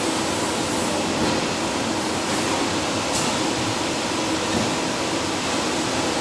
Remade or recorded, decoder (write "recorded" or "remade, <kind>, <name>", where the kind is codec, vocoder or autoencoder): recorded